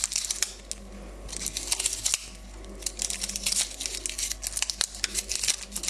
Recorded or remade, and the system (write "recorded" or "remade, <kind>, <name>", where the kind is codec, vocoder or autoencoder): recorded